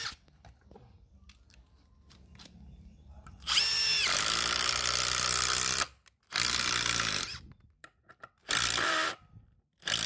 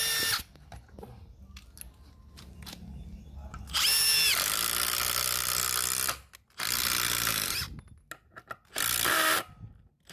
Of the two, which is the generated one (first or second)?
first